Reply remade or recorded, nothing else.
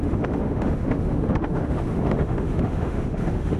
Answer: remade